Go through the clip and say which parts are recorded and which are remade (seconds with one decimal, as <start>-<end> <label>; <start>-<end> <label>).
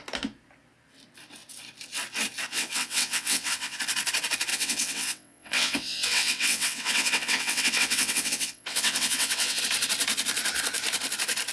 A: 0.0-2.5 recorded; 2.5-3.8 remade; 3.8-4.5 recorded; 4.5-9.6 remade; 9.6-11.5 recorded